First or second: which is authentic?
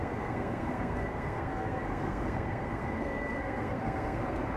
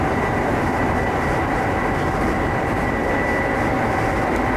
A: second